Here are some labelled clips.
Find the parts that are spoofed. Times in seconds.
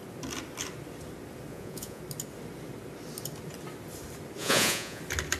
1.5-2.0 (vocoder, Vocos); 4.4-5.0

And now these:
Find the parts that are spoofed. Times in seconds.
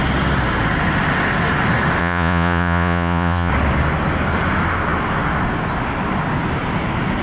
2.0-3.5 (vocoder, Vocos)